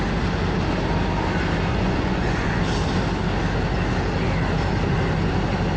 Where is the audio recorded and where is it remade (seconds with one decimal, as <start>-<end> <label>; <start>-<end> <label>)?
0.0-1.7 recorded; 1.7-2.6 remade; 2.6-5.8 recorded